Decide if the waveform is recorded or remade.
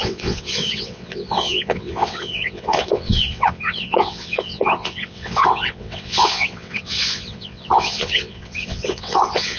remade